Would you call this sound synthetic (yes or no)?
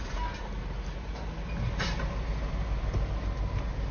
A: no